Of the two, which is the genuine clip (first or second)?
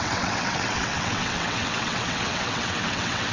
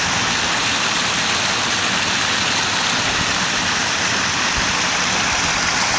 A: second